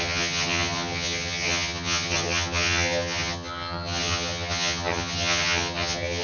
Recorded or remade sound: remade